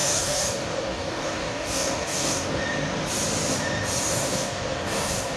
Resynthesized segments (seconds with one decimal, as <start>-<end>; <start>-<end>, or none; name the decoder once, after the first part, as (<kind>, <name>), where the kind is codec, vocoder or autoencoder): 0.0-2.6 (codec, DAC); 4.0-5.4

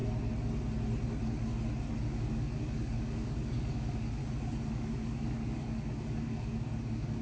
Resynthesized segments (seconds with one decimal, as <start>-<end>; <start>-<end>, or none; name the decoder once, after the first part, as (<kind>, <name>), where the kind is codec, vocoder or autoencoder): 2.0-4.2 (codec, DAC); 4.7-7.2

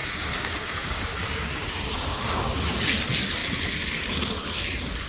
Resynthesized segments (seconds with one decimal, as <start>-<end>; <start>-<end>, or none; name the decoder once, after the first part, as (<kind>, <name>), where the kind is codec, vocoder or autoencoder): 0.0-1.7 (codec, DAC); 2.1-2.8

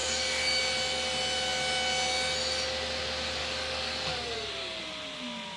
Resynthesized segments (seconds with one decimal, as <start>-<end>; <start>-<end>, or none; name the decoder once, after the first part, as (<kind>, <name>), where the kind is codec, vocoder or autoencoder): 0.0-0.6 (codec, DAC); 3.4-4.8

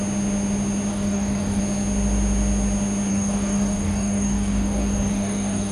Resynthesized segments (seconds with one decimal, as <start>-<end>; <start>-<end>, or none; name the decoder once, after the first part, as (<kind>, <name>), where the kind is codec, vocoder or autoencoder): 0.9-1.6 (codec, DAC); 3.1-5.7

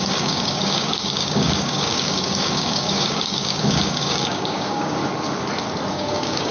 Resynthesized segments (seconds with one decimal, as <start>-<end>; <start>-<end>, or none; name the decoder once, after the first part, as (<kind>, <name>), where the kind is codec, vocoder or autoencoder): 0.0-5.0 (codec, DAC); 5.9-6.5

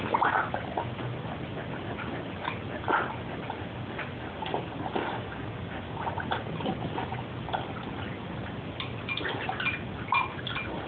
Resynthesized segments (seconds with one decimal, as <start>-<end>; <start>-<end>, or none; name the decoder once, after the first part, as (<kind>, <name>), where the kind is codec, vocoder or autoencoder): 5.0-6.1 (codec, DAC)